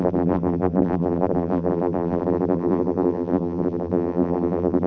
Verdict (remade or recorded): remade